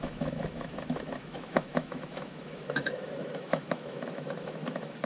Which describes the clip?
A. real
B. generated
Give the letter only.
B